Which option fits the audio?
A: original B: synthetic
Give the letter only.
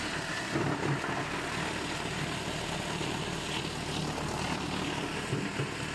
A